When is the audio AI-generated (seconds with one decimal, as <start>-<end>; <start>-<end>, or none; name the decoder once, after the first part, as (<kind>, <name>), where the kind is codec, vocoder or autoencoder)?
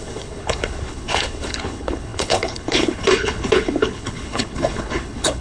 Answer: 0.0-5.4 (codec, HILCodec)